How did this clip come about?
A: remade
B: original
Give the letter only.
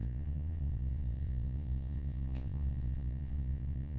A